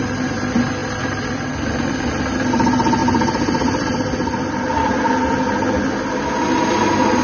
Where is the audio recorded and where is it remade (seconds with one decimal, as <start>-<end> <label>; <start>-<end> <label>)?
0.0-0.8 recorded; 0.8-1.5 remade; 1.5-3.0 recorded; 3.0-5.1 remade; 5.1-7.2 recorded